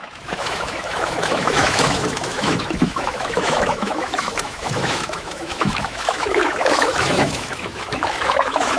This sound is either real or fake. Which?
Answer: fake